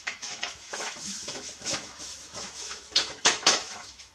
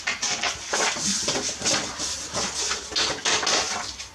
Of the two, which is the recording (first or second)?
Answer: second